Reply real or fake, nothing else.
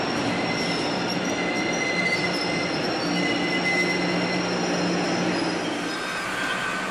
real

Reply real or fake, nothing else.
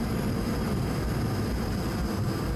real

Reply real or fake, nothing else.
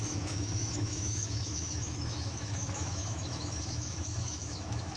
fake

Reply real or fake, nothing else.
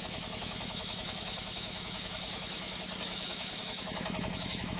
fake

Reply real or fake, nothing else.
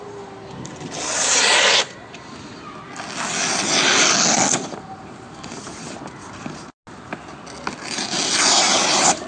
real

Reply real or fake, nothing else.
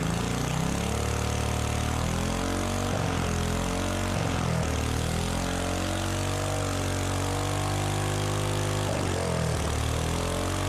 real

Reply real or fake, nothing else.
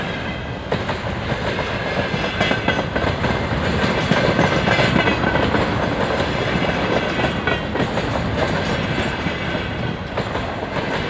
real